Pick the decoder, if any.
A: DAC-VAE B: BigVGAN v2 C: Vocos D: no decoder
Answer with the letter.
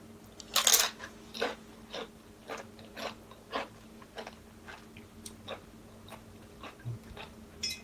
D